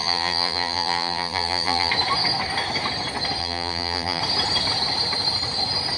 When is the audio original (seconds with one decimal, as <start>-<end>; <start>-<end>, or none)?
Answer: 1.9-3.4; 4.2-6.0